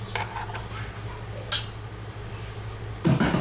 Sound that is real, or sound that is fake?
real